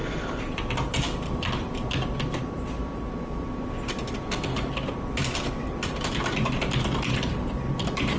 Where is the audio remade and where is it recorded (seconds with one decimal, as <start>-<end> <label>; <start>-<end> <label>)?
0.0-8.2 recorded